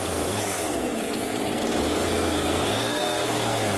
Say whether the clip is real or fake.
fake